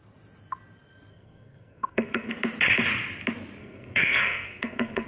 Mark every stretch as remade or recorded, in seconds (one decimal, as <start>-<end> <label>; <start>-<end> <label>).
0.0-1.1 recorded; 1.1-2.3 remade; 2.3-3.6 recorded; 3.6-5.1 remade

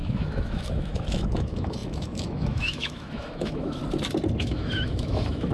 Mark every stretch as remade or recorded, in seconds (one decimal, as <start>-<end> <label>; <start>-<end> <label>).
0.0-3.8 remade; 3.8-4.4 recorded; 4.4-5.5 remade

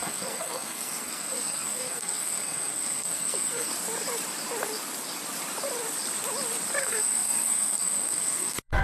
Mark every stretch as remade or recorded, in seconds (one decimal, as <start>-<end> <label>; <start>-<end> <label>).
0.0-3.7 remade; 3.7-6.8 recorded; 6.8-8.8 remade

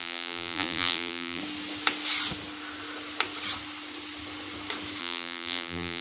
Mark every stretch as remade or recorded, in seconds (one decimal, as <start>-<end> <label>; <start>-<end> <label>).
0.0-1.4 remade; 1.4-5.0 recorded; 5.0-6.0 remade

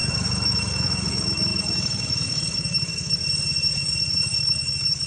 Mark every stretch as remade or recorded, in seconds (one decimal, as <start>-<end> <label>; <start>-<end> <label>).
0.0-3.2 remade; 3.2-4.4 recorded; 4.4-5.1 remade

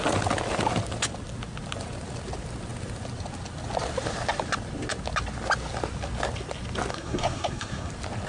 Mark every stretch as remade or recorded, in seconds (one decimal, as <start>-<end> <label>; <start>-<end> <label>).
0.0-6.9 recorded; 6.9-7.9 remade; 7.9-8.3 recorded

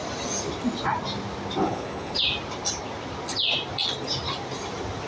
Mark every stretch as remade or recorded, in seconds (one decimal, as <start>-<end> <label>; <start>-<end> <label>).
0.0-1.6 recorded; 1.6-2.2 remade; 2.2-5.1 recorded